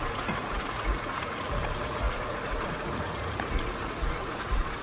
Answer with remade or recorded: remade